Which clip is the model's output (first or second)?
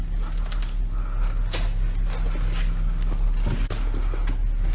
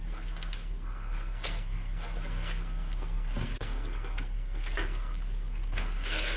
second